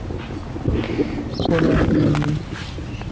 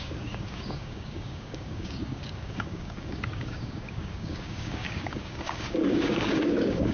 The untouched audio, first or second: first